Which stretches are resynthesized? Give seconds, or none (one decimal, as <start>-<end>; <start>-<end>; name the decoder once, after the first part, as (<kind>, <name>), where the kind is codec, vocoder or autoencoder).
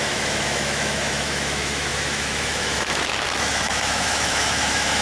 0.0-5.0 (autoencoder, DAC-VAE)